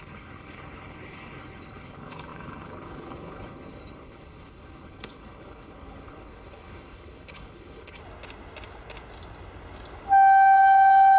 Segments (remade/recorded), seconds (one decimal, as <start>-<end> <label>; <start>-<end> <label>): 0.0-8.0 remade; 8.0-11.2 recorded